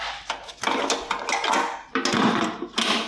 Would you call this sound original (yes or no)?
yes